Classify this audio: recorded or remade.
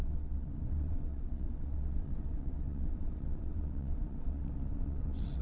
remade